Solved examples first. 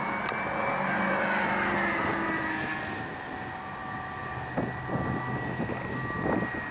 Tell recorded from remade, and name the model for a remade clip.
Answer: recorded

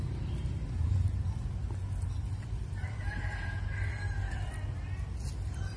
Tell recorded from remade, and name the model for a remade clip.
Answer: recorded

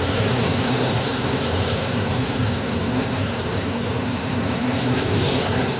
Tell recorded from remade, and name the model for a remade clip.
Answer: remade, codec, SNAC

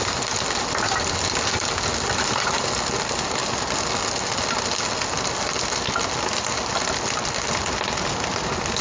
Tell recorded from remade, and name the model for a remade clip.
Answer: recorded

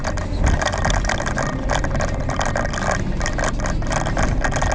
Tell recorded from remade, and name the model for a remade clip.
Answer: recorded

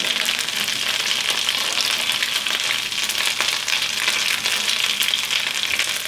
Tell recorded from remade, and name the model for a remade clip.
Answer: recorded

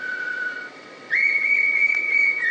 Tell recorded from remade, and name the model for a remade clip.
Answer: remade, vocoder, WaveNeXt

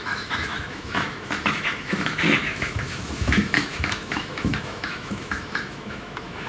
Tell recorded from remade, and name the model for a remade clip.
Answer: remade, autoencoder, DAC-VAE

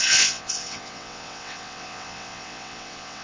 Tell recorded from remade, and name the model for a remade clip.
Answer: remade, vocoder, WaveNeXt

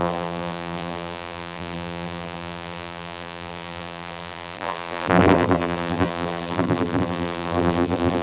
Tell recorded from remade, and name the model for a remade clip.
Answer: remade, vocoder, BigVGAN v2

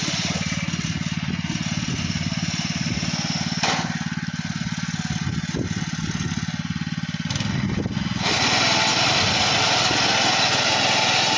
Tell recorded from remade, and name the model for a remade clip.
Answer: recorded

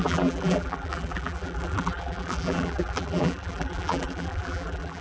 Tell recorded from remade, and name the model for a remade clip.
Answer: remade, vocoder, BigVGAN v2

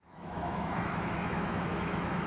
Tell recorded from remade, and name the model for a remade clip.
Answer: remade, autoencoder, DAC-VAE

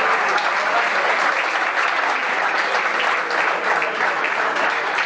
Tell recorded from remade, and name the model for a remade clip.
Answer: recorded